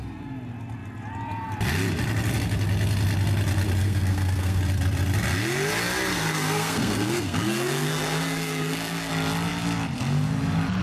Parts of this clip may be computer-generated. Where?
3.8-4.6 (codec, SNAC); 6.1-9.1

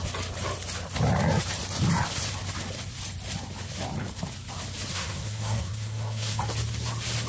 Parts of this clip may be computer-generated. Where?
4.9-6.4 (codec, SNAC)

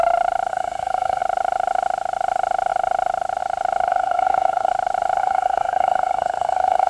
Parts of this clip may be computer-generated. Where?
0.5-1.2 (codec, SNAC); 3.9-4.7; 5.2-6.9

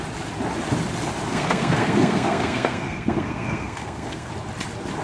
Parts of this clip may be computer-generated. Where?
1.3-4.3 (codec, SNAC)

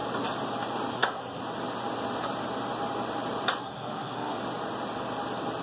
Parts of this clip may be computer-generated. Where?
0.9-1.4 (codec, SNAC); 3.6-4.4